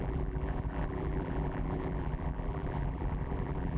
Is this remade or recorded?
remade